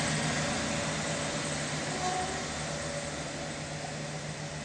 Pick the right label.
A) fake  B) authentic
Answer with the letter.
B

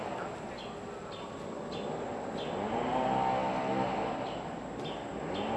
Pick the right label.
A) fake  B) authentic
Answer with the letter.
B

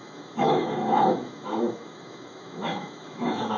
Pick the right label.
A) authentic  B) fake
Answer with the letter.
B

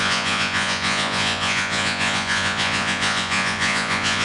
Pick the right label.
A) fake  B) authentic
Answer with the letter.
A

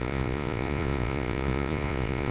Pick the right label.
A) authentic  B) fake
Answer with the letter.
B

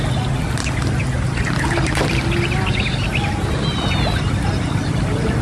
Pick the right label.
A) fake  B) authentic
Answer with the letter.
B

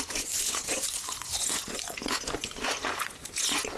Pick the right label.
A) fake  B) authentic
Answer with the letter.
A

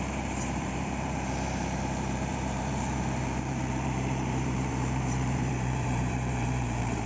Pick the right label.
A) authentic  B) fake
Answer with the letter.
B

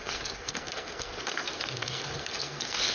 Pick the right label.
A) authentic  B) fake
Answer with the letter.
B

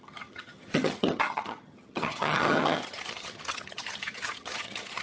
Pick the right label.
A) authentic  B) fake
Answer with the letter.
B